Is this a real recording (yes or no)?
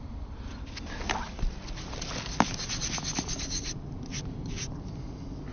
yes